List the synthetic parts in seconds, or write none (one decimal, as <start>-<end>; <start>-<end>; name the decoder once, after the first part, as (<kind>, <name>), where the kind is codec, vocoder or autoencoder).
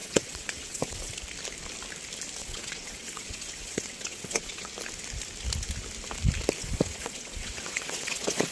0.0-1.1 (vocoder, WaveNeXt); 2.4-4.7; 6.6-8.5